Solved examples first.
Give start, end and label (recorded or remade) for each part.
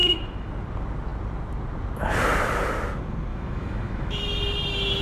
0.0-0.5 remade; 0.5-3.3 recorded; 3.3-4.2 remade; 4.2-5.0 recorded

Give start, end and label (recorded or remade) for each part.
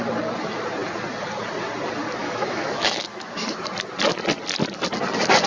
0.0-2.2 recorded; 2.2-3.6 remade; 3.6-5.5 recorded